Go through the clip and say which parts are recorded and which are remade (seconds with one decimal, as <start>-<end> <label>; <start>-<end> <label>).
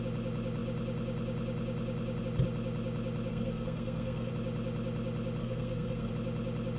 0.0-3.3 recorded; 3.3-4.3 remade; 4.3-5.4 recorded; 5.4-6.1 remade; 6.1-6.8 recorded